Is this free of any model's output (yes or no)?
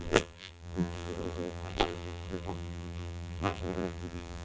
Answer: no